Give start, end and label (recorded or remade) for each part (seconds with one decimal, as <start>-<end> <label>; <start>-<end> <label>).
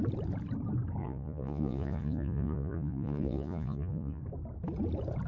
0.0-1.0 recorded; 1.0-4.2 remade; 4.2-5.3 recorded